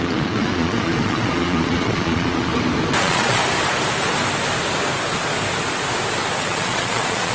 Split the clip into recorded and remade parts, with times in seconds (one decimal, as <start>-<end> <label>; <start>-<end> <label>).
0.0-2.5 remade; 2.5-3.0 recorded; 3.0-3.4 remade; 3.4-6.4 recorded; 6.4-7.3 remade